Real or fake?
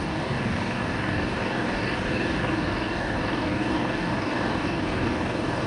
fake